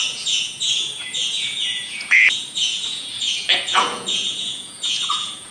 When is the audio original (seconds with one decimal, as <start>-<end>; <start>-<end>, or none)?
none